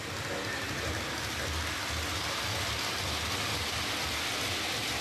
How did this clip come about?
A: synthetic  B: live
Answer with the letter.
B